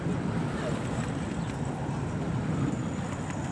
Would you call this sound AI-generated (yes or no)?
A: no